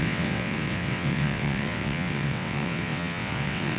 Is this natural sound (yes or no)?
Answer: no